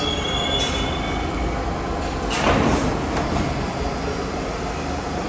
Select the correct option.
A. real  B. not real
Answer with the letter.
A